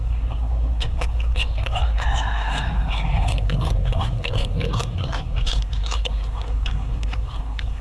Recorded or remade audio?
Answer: remade